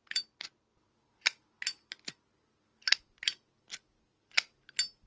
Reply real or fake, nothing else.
real